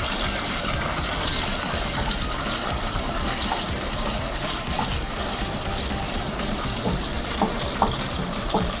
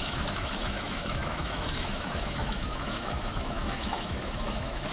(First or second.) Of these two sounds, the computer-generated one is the second